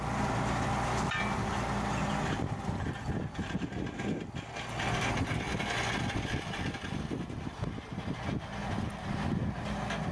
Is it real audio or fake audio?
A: real